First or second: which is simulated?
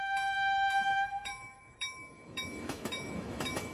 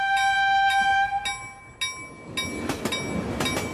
first